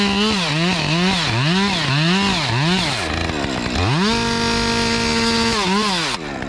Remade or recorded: recorded